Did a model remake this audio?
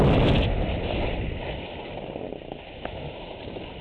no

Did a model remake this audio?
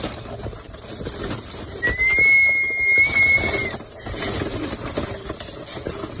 no